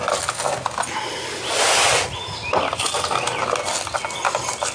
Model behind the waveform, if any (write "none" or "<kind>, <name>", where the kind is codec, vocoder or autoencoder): none